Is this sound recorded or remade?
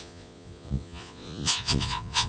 remade